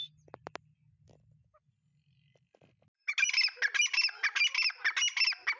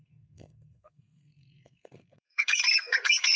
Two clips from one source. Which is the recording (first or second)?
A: first